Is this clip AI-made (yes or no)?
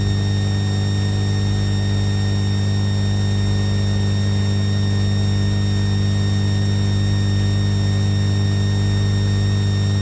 no